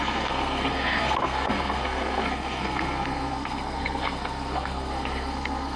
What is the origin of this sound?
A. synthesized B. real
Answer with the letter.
A